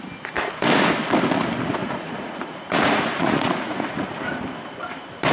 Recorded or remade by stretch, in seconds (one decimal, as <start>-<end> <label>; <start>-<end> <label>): 0.0-1.8 recorded; 1.8-4.2 remade; 4.2-5.3 recorded

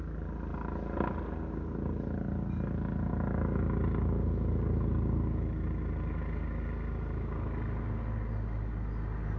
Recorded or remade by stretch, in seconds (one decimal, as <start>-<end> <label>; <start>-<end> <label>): 0.0-9.4 recorded

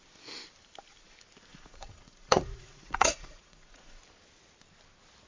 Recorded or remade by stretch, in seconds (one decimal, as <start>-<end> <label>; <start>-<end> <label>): 0.0-1.5 recorded; 1.5-4.0 remade; 4.0-5.3 recorded

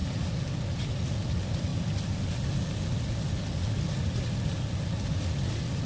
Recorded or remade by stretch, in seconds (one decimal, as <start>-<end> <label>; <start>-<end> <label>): 0.0-5.9 recorded

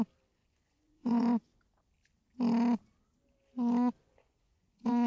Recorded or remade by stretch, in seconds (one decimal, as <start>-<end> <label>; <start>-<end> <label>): 0.0-0.4 recorded; 0.4-1.6 remade; 1.6-4.0 recorded; 4.0-5.1 remade